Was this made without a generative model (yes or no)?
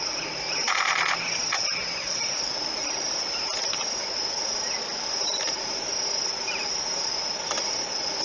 yes